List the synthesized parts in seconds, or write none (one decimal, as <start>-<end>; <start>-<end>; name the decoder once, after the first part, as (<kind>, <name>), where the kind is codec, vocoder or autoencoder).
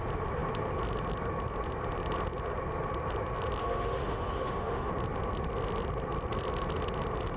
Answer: 3.6-4.9 (autoencoder, DAC-VAE)